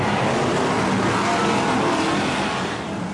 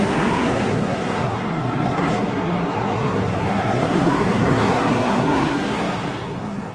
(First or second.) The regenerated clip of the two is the second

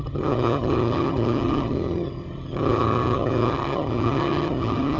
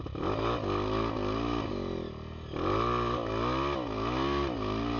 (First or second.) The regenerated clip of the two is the first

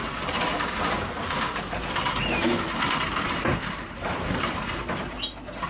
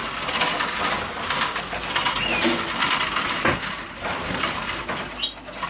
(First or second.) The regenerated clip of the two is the first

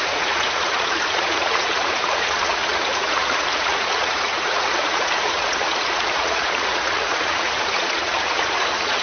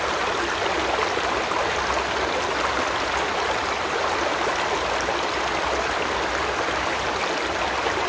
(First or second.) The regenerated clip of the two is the first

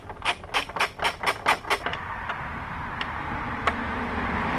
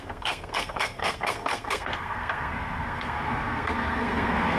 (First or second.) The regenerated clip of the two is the second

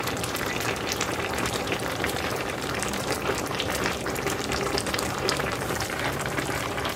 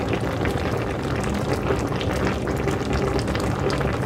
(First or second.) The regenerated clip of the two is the first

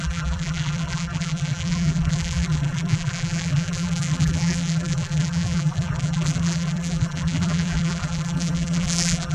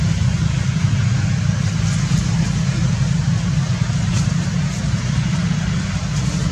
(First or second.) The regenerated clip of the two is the first